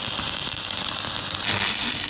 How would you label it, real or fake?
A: real